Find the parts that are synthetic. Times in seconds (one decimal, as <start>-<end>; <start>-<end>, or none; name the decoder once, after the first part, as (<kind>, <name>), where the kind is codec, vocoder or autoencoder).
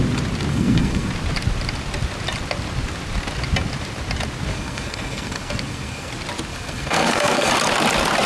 0.5-1.1 (codec, SNAC); 4.5-6.1; 6.5-7.5